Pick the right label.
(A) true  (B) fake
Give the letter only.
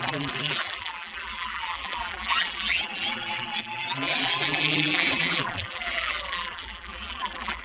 B